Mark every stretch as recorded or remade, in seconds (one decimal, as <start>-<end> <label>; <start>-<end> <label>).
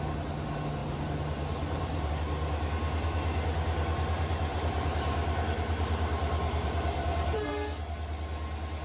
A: 0.0-0.8 recorded; 0.8-2.1 remade; 2.1-4.5 recorded; 4.5-7.5 remade; 7.5-8.8 recorded